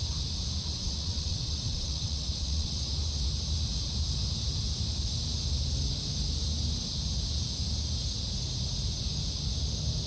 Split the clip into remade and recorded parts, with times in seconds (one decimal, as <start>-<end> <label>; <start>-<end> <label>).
0.0-0.7 recorded; 0.7-2.8 remade; 2.8-10.1 recorded